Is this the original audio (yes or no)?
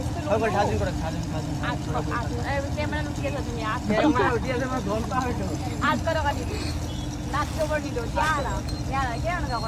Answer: yes